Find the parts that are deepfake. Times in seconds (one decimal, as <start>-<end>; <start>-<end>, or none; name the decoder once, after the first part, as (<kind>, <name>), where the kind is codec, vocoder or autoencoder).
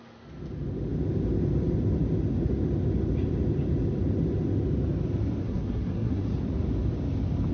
5.4-6.2 (codec, SNAC)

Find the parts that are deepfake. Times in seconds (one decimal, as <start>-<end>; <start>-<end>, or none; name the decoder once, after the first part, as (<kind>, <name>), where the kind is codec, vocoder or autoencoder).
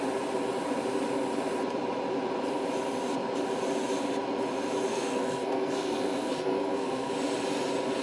4.9-7.1 (codec, SNAC)